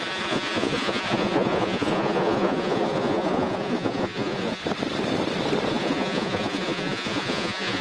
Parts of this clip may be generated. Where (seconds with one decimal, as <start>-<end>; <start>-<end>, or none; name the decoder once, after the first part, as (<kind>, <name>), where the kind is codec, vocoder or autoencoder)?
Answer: 0.0-4.6 (vocoder, Vocos); 5.7-7.8